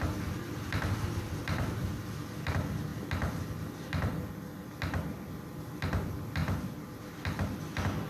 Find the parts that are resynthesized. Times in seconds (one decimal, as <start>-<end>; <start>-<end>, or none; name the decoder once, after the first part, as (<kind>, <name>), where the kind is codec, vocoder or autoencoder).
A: 2.9-4.7 (vocoder, BigVGAN v2)